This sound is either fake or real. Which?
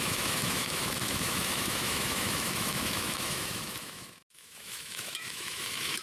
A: fake